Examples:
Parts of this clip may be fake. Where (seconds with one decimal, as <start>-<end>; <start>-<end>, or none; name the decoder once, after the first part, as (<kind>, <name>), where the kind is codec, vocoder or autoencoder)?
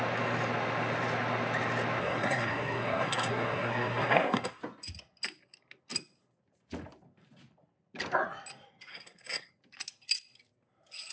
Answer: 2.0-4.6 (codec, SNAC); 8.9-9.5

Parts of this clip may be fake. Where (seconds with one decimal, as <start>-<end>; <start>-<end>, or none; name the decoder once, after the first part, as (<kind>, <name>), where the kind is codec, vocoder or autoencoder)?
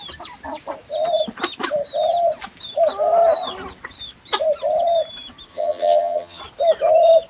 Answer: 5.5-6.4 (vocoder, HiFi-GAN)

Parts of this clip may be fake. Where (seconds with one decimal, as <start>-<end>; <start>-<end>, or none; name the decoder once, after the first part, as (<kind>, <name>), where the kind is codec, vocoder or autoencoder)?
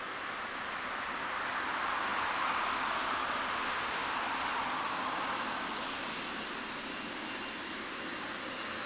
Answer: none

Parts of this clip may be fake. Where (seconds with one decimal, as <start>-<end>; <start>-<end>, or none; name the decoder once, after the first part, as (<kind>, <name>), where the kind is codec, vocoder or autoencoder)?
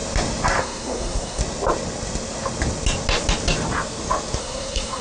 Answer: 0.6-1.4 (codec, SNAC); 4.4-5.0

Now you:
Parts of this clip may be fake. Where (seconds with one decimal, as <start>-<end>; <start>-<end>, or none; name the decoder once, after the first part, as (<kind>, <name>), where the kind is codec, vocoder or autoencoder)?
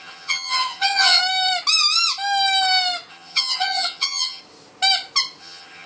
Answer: 0.0-1.2 (vocoder, HiFi-GAN); 3.1-4.4; 5.4-5.9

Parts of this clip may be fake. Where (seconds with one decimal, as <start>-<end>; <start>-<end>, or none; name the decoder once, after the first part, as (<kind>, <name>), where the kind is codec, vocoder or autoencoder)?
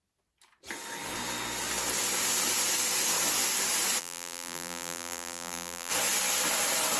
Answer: 4.0-5.9 (vocoder, BigVGAN v2)